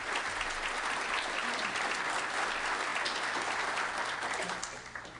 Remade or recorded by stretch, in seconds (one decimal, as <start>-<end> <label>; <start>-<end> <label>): 0.0-5.2 recorded